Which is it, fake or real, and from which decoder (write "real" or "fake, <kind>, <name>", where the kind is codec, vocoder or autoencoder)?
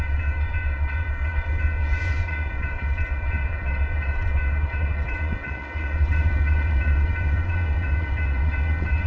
fake, vocoder, WaveNeXt